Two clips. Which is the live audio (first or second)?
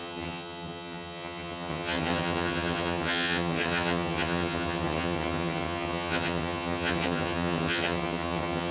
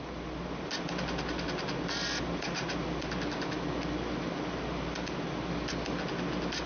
second